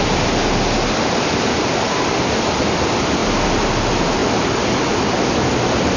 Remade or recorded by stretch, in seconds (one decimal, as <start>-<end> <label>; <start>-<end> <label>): 0.0-6.0 recorded